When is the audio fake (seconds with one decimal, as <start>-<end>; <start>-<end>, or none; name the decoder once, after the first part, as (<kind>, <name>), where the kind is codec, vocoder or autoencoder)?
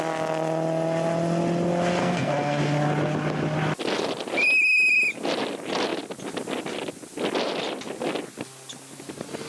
2.0-2.6 (codec, SNAC)